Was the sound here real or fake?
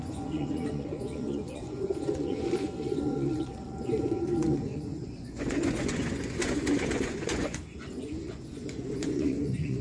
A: fake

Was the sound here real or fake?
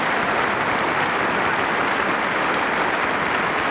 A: real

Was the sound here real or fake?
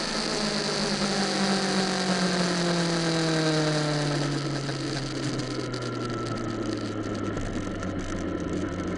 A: real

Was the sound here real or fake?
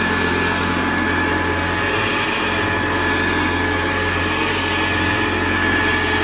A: real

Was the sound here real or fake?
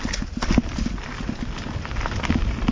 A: real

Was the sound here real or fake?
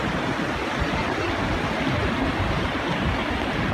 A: real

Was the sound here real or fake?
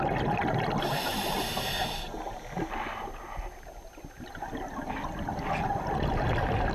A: real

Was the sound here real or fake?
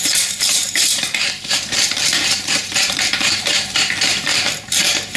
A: fake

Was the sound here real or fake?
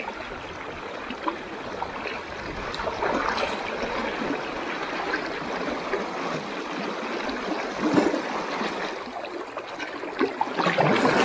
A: real